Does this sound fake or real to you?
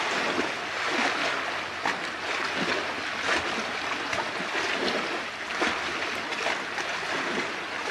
real